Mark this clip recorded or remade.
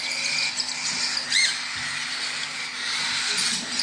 recorded